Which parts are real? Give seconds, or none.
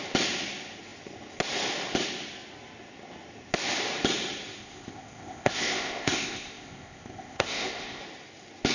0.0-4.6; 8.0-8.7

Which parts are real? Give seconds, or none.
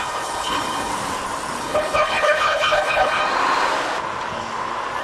0.9-1.6; 3.2-5.0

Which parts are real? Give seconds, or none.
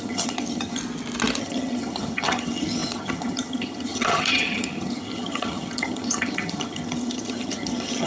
0.8-1.4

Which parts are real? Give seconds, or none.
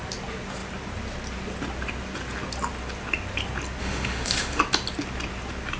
0.0-3.8; 4.6-5.8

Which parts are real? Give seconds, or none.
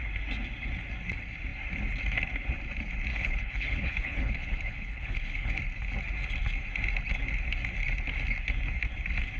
0.0-3.1; 5.6-9.4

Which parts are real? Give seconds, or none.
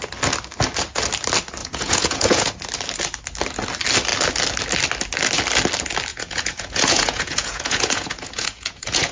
0.0-1.6; 2.5-6.1